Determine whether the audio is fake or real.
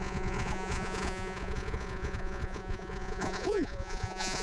fake